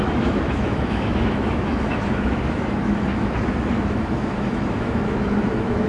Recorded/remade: remade